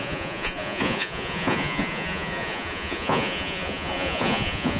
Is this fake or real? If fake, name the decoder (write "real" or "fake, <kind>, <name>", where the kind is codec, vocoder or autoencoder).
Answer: fake, vocoder, Vocos